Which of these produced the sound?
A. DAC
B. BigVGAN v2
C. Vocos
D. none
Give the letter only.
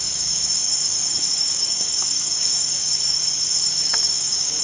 A